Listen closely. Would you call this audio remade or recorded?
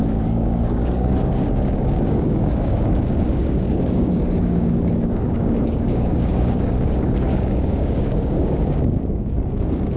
remade